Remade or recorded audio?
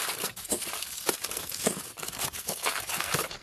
remade